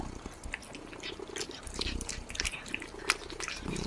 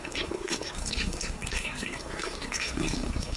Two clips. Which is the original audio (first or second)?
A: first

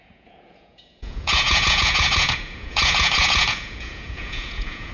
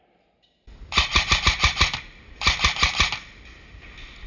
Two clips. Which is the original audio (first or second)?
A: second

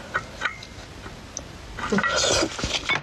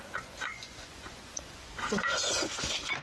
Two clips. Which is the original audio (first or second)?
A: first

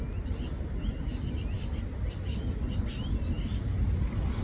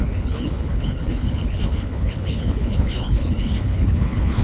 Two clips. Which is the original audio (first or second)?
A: first